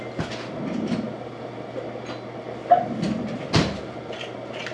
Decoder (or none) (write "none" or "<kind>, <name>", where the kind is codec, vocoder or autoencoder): none